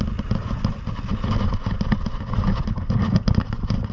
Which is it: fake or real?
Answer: real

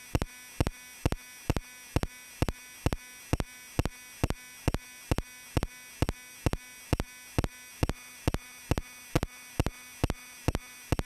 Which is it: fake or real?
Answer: real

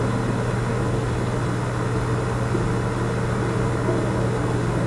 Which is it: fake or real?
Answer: real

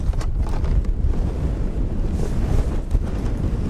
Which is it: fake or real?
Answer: real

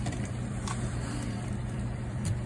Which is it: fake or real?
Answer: fake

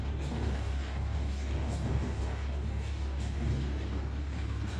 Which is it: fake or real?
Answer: fake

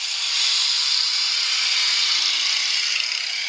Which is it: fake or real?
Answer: real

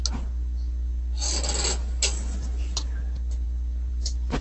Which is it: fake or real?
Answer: real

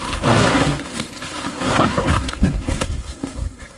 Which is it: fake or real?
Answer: fake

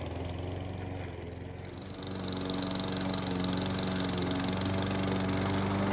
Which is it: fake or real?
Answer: real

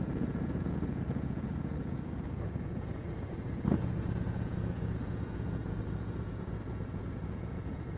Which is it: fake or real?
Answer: fake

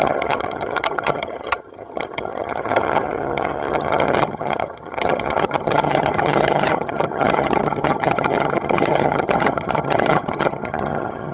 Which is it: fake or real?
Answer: fake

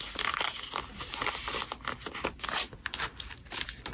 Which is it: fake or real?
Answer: real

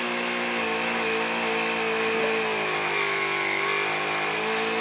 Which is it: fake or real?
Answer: real